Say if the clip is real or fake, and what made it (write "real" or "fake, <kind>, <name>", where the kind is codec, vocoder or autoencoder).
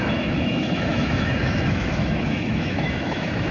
fake, autoencoder, DAC-VAE